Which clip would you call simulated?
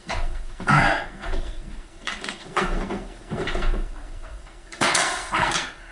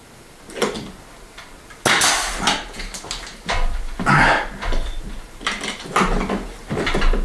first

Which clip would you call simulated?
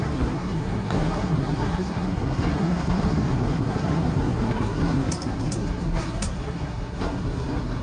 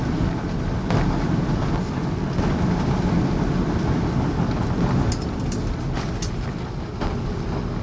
first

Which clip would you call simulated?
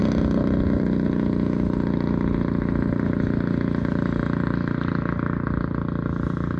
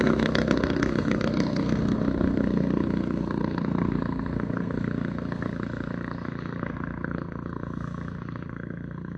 second